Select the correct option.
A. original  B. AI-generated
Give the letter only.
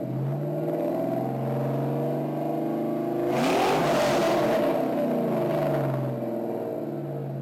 A